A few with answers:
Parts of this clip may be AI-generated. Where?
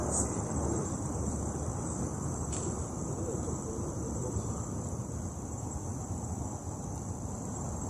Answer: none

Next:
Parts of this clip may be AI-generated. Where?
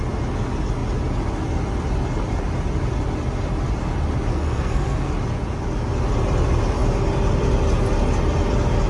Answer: 4.3-5.1 (codec, SNAC)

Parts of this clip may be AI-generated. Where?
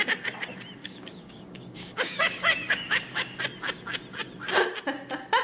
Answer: 0.8-3.4 (codec, DAC)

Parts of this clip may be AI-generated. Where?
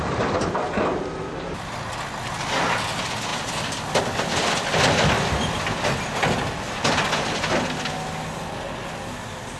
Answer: none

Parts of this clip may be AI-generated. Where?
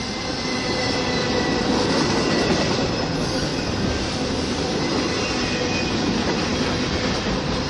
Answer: none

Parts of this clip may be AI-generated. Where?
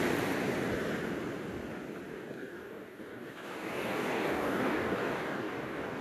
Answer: 2.1-6.0 (codec, DAC)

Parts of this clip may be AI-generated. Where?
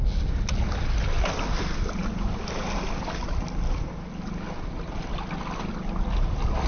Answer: none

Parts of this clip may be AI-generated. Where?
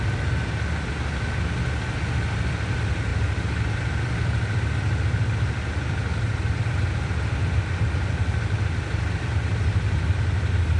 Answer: none